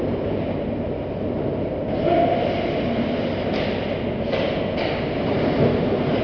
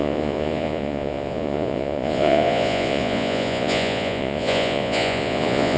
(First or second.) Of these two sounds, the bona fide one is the first